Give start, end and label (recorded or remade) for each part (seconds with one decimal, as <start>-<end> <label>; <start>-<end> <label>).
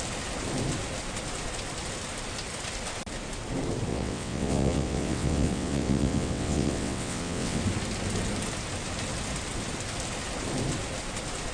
0.0-3.9 recorded; 3.9-7.6 remade; 7.6-11.5 recorded